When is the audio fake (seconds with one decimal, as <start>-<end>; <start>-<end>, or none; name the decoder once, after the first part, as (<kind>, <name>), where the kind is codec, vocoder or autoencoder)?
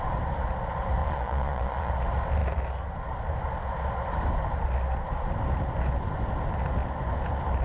1.0-1.9 (vocoder, Vocos)